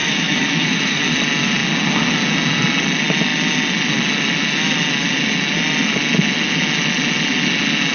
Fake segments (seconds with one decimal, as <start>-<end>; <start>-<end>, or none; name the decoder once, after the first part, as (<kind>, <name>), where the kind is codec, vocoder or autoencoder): 0.0-1.0 (autoencoder, DAC-VAE)